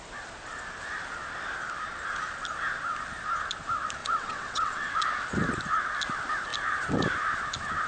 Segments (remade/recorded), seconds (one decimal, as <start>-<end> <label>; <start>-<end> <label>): 0.0-4.0 recorded; 4.0-4.9 remade; 4.9-7.9 recorded